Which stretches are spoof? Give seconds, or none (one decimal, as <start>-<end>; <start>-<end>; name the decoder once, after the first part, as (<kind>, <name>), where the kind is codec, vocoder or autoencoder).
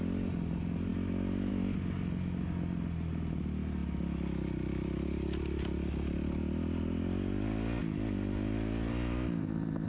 none